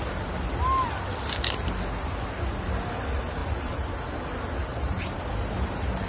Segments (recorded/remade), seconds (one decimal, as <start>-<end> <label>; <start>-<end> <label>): 0.0-3.4 recorded; 3.4-3.9 remade; 3.9-4.7 recorded; 4.7-6.1 remade